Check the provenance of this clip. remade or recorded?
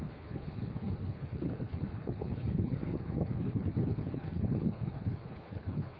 remade